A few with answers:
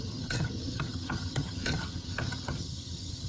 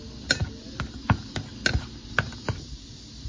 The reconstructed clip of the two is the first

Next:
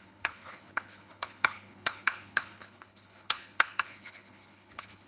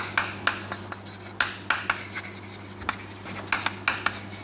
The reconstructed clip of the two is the first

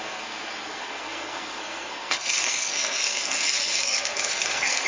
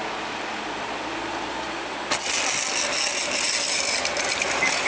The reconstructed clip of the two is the first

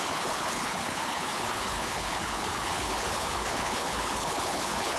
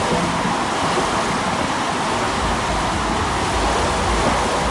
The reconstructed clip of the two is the first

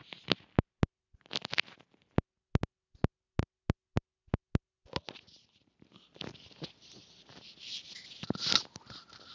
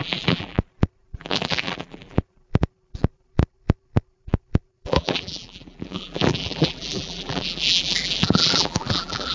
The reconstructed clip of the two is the second